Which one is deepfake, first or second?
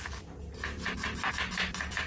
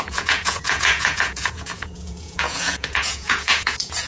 second